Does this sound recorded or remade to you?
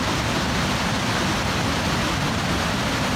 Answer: recorded